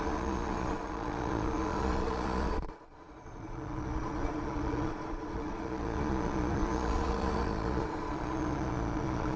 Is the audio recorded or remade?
remade